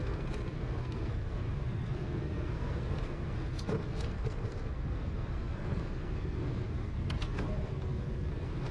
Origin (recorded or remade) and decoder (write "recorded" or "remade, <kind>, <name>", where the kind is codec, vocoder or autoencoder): remade, codec, SNAC